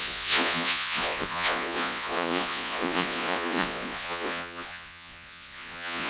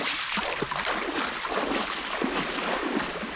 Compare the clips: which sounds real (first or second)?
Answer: second